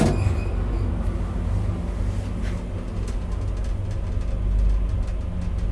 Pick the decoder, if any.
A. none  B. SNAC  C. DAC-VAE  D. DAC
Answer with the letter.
A